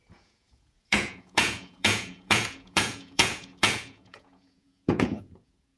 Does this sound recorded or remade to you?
remade